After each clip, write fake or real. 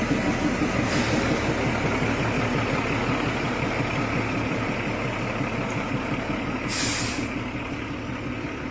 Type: real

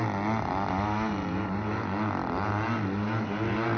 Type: real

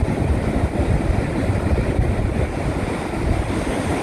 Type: real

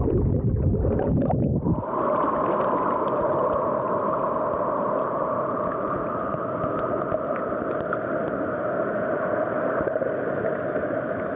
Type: real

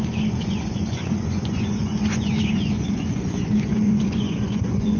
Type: fake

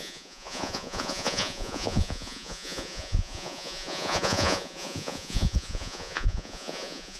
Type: fake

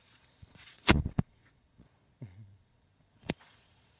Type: fake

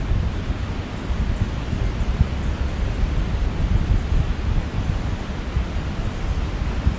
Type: real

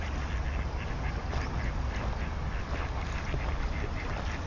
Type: real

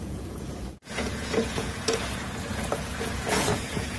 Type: fake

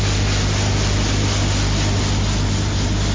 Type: real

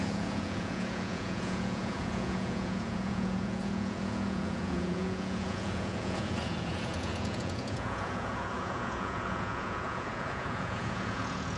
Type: fake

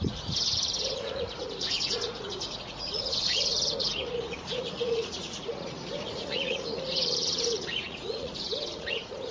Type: fake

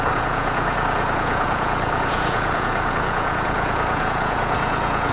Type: fake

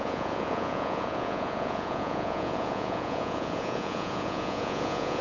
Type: fake